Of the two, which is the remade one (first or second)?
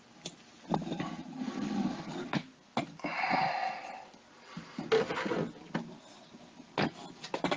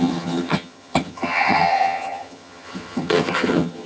second